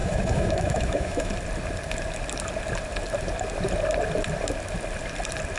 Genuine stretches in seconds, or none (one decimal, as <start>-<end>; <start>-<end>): 1.3-5.6